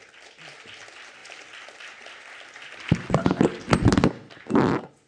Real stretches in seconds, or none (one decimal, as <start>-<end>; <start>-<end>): 0.0-1.2; 4.3-5.1